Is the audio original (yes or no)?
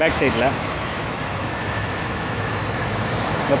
no